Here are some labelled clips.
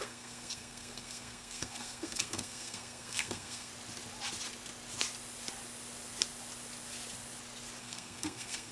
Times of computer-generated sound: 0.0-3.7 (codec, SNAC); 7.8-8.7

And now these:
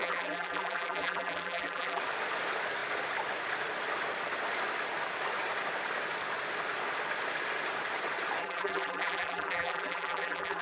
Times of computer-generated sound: 0.0-2.0 (vocoder, BigVGAN v2); 8.4-10.6

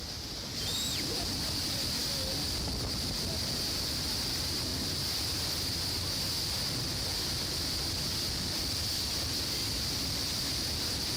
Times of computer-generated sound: 0.0-2.0 (vocoder, BigVGAN v2); 2.6-9.6; 10.1-11.2

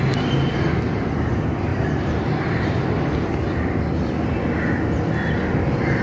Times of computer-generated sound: 1.7-2.4 (vocoder, BigVGAN v2)

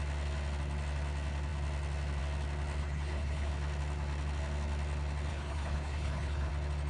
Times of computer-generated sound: 2.8-3.5 (codec, HILCodec); 5.3-6.5

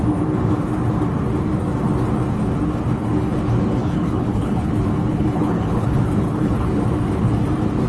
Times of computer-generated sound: 3.8-6.8 (codec, HILCodec)

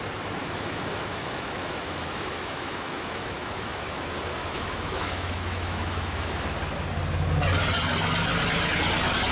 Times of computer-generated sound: 0.4-4.0 (autoencoder, DAC-VAE); 4.4-6.3